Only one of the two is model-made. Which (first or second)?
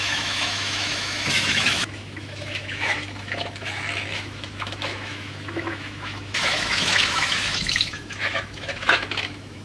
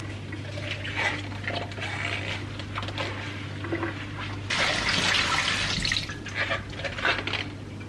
first